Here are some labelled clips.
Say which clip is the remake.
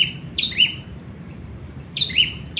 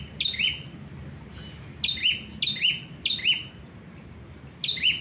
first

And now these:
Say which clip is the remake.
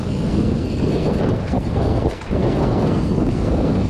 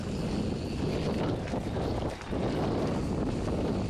first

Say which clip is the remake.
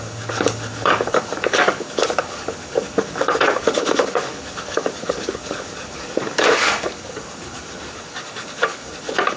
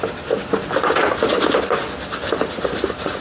first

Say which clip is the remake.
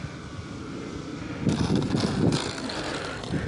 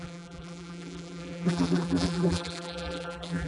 second